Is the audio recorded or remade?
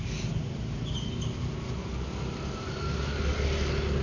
recorded